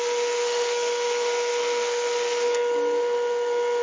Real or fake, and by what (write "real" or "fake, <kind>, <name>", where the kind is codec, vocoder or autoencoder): fake, codec, SNAC